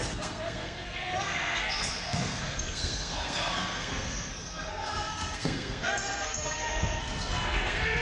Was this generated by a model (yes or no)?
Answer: yes